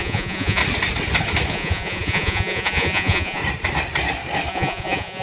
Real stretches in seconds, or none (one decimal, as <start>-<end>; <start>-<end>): 0.6-1.5; 3.4-4.5